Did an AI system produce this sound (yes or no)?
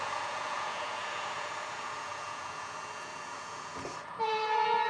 yes